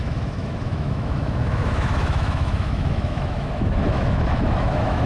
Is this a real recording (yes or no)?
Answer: no